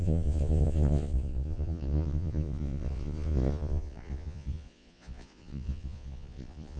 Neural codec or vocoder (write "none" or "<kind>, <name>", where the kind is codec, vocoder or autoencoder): vocoder, Vocos